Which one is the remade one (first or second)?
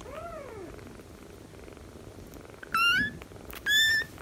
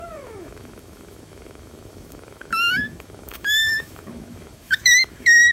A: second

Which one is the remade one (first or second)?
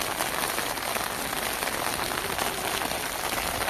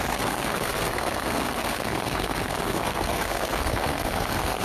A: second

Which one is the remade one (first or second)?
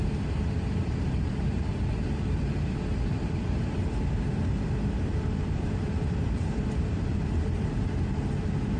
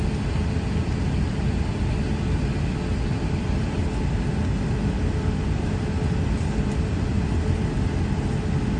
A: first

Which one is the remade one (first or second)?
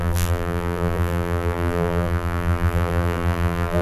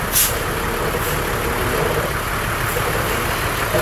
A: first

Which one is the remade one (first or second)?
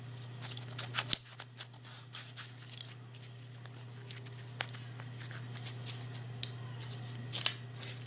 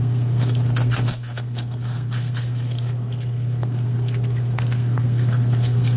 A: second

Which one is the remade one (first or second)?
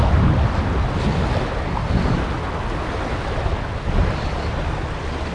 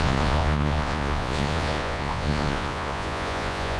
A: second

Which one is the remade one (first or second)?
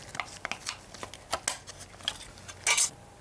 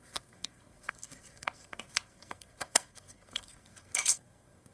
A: second